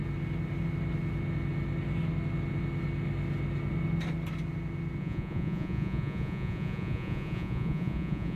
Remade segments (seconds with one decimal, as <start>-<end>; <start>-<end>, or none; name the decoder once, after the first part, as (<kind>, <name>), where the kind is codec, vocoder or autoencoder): 5.0-8.4 (vocoder, Vocos)